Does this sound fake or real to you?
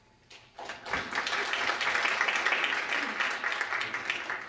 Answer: real